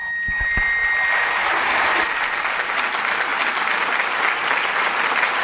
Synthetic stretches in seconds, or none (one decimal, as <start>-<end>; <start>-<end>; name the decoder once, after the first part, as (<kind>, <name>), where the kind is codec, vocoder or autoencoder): none